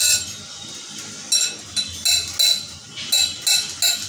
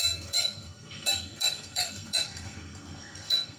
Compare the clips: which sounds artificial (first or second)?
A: second